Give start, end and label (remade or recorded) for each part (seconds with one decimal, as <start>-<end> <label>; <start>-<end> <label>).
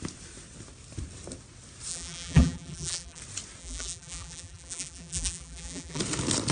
0.0-1.9 recorded; 1.9-3.2 remade; 3.2-3.6 recorded; 3.6-6.0 remade; 6.0-6.5 recorded